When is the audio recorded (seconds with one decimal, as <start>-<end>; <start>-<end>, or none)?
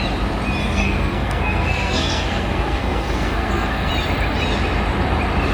0.0-0.6; 3.9-5.5